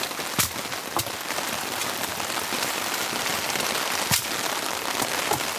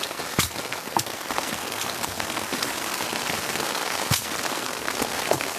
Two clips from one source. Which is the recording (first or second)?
first